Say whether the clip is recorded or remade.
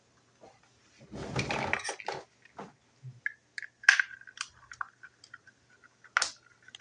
recorded